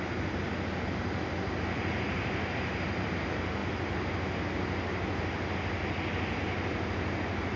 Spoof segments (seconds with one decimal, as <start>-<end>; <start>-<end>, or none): none